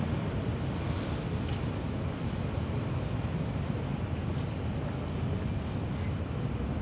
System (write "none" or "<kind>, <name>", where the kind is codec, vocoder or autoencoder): none